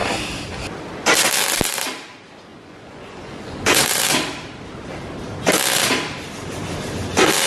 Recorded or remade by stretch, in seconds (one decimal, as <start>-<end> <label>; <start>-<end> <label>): 0.0-2.5 recorded; 2.5-3.8 remade; 3.8-7.5 recorded